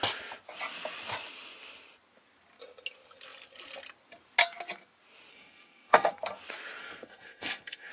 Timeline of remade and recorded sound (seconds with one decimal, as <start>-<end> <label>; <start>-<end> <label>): 0.0-5.3 recorded; 5.3-6.1 remade; 6.1-6.8 recorded; 6.8-7.9 remade